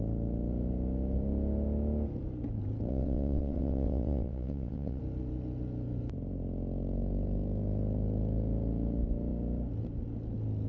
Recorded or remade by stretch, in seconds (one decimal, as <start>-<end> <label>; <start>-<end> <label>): 0.0-2.9 recorded; 2.9-5.0 remade; 5.0-10.7 recorded